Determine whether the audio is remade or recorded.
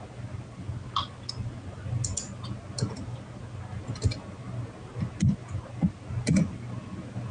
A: recorded